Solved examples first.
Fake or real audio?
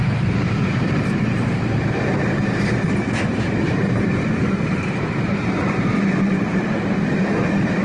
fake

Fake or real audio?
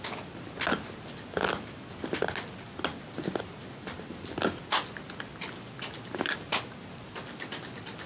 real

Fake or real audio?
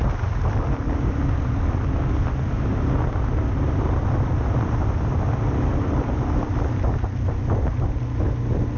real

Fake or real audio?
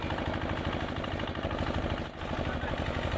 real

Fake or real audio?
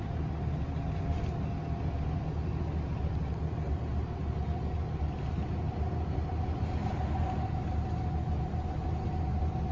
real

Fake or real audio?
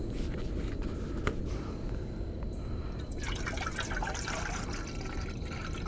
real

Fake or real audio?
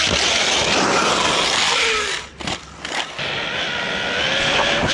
real